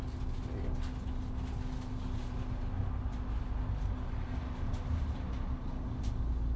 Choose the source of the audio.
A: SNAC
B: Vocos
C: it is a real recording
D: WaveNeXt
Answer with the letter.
C